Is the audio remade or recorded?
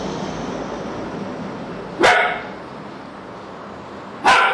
recorded